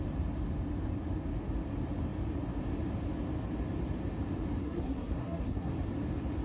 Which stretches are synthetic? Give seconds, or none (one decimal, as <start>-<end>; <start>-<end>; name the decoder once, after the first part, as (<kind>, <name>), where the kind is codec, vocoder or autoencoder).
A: 4.6-5.7 (codec, SNAC)